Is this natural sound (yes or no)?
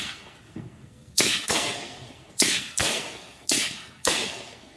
no